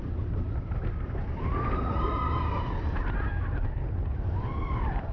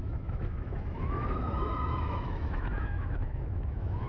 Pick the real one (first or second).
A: first